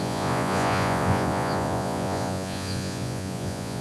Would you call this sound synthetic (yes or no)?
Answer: yes